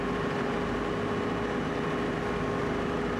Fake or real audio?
real